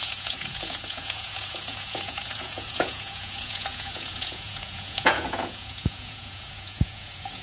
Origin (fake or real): fake